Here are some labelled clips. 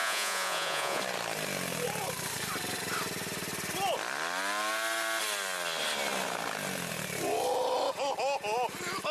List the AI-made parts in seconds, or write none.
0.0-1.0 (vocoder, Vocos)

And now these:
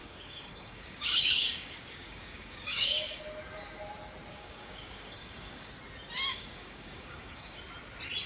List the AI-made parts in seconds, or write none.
0.0-3.2 (codec, DAC); 4.3-5.7; 6.3-7.6

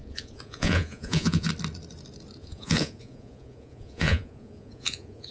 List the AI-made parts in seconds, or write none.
0.0-1.5 (vocoder, Vocos); 2.4-5.3

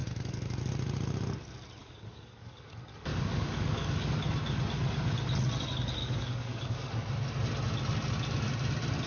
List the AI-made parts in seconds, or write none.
0.0-0.7 (codec, DAC); 1.8-2.7; 3.1-4.1; 6.0-6.9